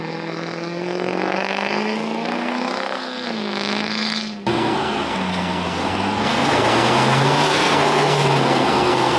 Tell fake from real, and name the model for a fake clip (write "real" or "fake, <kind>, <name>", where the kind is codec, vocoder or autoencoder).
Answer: fake, codec, SNAC